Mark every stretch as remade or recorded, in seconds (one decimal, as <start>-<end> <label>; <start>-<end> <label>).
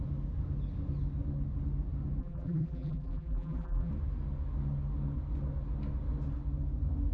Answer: 0.0-2.2 recorded; 2.2-3.9 remade; 3.9-7.1 recorded